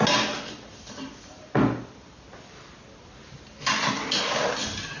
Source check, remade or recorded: recorded